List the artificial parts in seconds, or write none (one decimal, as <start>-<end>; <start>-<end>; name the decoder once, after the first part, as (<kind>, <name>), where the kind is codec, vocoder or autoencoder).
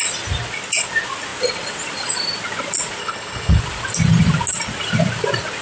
3.0-3.6 (codec, HILCodec)